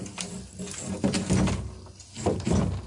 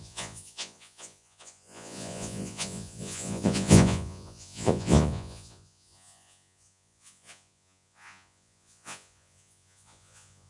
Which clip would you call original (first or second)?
first